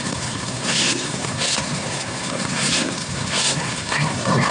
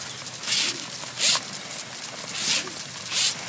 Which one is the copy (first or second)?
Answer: first